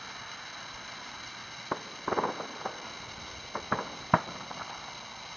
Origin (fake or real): real